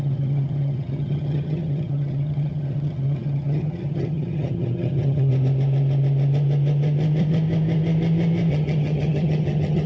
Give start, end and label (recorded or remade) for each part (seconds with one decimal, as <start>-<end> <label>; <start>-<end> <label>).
0.0-5.3 remade; 5.3-8.5 recorded; 8.5-9.9 remade